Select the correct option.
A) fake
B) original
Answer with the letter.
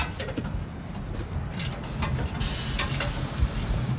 B